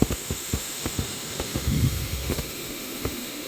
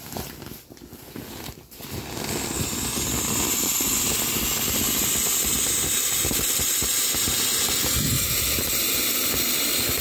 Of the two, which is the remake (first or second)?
first